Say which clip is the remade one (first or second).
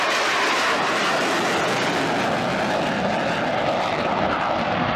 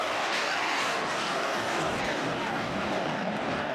second